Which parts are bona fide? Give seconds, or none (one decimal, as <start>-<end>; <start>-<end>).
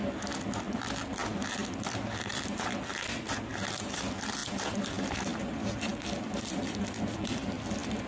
0.0-1.0; 3.2-5.9